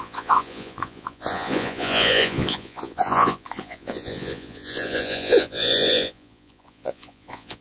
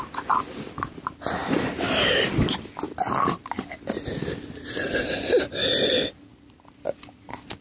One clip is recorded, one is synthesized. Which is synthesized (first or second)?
first